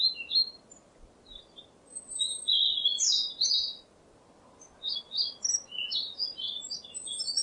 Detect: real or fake real